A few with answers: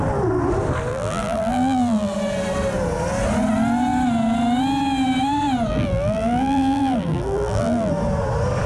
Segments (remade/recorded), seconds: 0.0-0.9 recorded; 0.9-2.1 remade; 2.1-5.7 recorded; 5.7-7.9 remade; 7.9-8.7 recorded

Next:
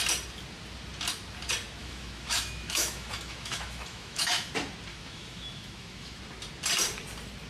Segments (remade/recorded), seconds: 0.0-1.8 recorded; 1.8-4.5 remade; 4.5-4.9 recorded; 4.9-6.2 remade; 6.2-7.5 recorded

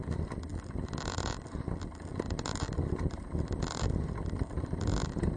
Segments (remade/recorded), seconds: 0.0-5.4 recorded

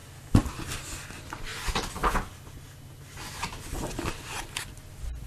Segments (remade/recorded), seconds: 0.0-5.3 recorded